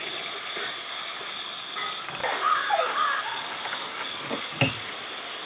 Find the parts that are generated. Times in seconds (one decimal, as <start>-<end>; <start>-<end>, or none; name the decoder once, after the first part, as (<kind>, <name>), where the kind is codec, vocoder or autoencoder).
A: 2.2-4.9 (codec, DAC)